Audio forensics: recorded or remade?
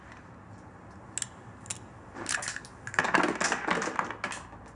recorded